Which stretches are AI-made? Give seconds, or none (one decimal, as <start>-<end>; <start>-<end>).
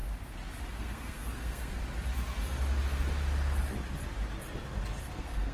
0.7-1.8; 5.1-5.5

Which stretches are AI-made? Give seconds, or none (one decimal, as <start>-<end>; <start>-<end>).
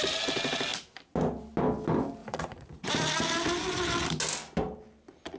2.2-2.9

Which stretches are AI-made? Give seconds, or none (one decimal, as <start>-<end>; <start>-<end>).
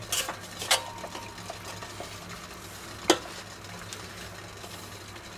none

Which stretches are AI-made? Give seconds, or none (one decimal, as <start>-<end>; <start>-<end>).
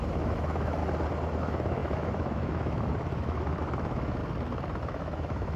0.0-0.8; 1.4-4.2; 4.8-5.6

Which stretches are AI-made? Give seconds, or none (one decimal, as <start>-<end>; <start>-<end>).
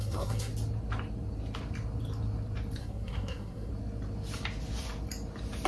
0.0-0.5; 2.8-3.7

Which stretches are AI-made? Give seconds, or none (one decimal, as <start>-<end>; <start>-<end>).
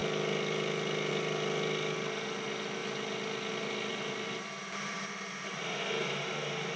3.9-6.3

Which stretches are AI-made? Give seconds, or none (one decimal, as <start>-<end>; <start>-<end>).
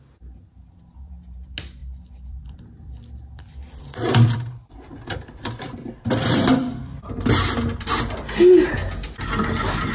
1.8-7.1